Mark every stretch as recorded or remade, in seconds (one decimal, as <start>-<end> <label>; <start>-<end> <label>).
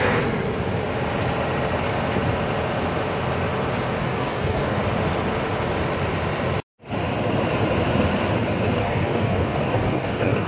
0.0-4.0 recorded; 4.0-4.8 remade; 4.8-8.8 recorded; 8.8-10.5 remade